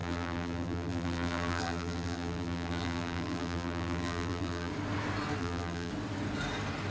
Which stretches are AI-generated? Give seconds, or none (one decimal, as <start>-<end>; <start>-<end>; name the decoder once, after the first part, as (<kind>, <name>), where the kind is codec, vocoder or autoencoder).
0.0-4.7 (vocoder, BigVGAN v2); 5.4-5.9